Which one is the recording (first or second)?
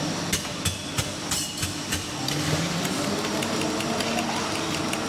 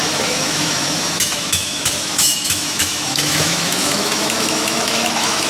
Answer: first